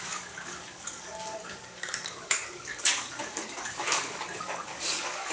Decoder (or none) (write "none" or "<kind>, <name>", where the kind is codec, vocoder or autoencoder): codec, DAC